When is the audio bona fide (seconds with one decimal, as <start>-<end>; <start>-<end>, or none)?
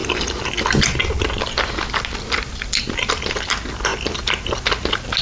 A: 0.0-5.2